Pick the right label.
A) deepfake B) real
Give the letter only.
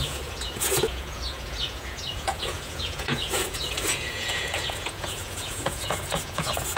A